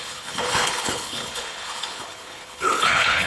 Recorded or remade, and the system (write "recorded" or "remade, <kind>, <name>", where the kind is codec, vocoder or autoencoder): remade, codec, HILCodec